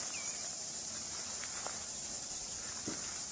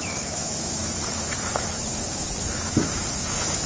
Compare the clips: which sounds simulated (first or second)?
second